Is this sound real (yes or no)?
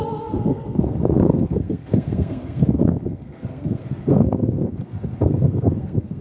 no